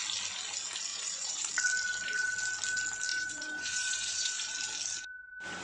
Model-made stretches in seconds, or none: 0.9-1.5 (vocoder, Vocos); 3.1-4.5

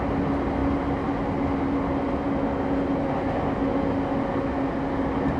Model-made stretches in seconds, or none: 2.9-3.4 (vocoder, BigVGAN v2)